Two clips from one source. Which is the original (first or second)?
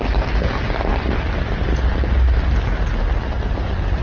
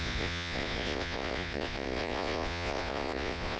first